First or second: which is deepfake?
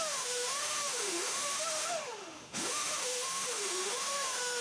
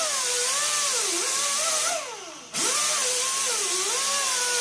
first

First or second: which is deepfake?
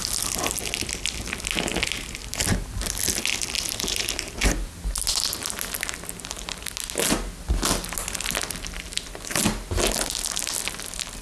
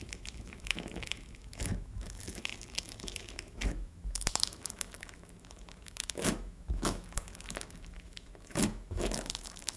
second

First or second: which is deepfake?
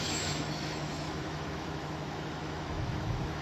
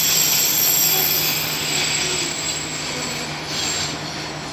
first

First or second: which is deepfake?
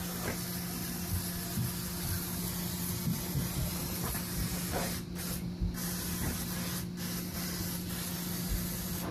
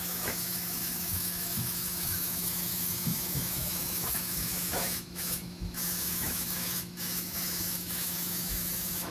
second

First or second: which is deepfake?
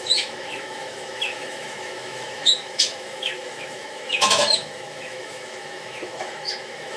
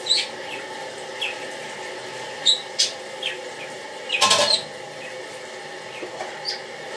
first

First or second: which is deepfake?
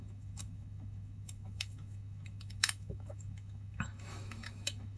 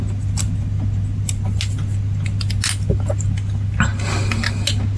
first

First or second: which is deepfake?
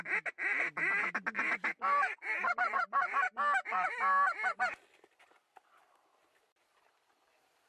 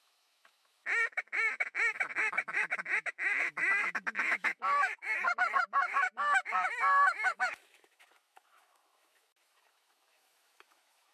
second